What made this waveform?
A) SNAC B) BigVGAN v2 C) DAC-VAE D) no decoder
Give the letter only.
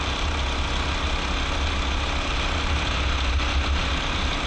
D